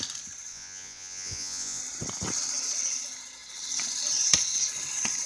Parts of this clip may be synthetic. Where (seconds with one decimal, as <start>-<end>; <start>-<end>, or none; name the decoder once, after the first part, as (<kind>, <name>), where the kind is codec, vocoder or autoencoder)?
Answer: 0.5-1.8 (vocoder, Vocos)